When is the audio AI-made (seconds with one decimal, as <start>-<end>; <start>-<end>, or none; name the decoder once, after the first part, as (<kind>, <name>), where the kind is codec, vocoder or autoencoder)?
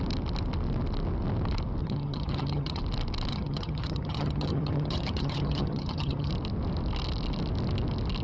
1.8-2.8 (vocoder, HiFi-GAN); 3.3-6.3